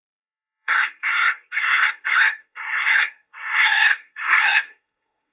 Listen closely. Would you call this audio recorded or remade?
remade